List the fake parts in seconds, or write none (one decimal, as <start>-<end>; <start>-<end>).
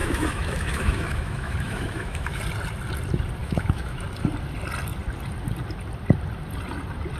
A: 0.0-2.4; 3.4-4.0